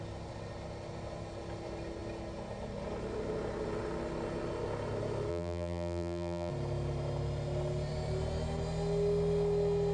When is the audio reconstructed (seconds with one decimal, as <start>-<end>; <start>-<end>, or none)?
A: 5.3-6.5